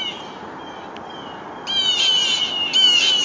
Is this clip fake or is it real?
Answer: real